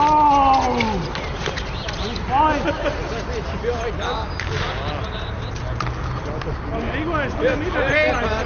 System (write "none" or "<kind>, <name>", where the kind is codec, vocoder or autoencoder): none